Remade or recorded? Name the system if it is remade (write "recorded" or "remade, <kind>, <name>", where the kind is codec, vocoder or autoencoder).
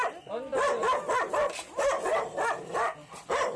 recorded